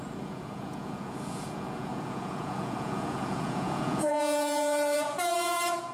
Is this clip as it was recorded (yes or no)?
no